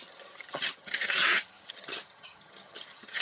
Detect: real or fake fake